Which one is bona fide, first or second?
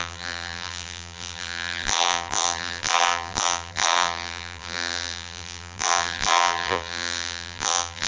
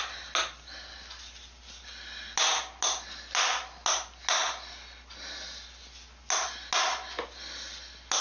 second